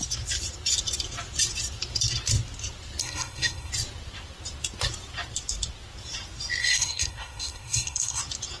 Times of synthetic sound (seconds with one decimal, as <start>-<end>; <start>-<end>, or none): 3.0-3.7; 6.6-8.2